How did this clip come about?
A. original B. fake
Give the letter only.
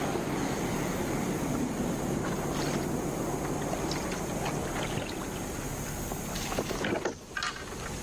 A